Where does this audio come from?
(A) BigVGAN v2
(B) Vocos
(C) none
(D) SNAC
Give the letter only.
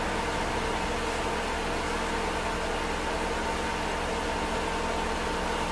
C